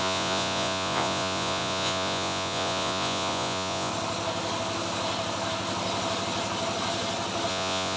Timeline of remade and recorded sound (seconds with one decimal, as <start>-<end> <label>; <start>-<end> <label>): 0.0-3.9 remade; 3.9-7.5 recorded; 7.5-8.0 remade